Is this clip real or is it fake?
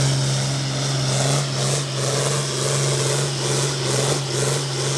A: real